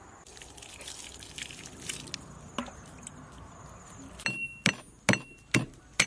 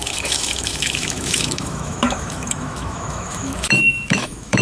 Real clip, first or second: first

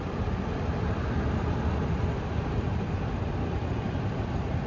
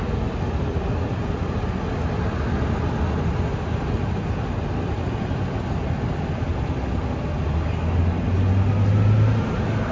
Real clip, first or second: second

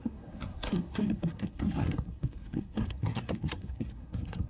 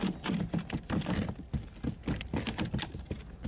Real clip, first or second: second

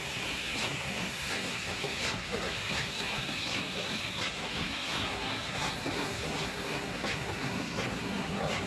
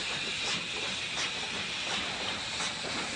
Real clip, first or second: second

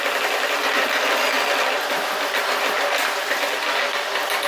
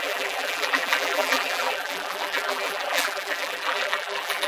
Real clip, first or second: first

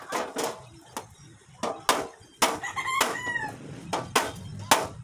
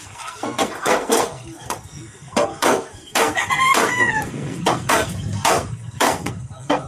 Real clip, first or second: first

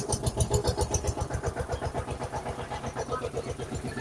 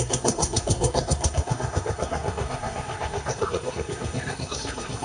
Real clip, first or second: first